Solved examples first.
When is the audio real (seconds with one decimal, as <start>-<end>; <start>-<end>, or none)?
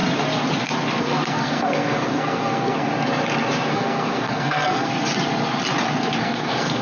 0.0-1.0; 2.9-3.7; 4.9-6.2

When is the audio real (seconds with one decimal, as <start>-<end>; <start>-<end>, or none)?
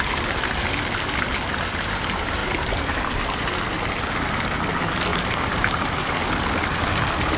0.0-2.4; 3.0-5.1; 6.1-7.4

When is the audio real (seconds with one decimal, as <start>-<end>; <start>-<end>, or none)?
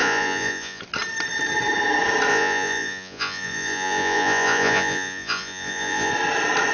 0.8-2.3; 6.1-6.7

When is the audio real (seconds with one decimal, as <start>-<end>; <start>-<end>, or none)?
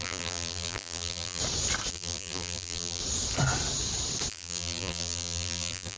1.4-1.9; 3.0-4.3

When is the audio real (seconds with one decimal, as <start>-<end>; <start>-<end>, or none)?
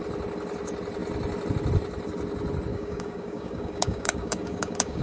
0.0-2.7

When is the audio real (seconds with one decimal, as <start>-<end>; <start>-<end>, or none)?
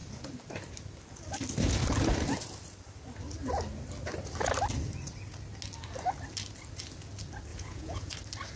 0.0-7.5; 8.1-8.6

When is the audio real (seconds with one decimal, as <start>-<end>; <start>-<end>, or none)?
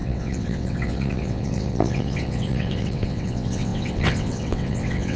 none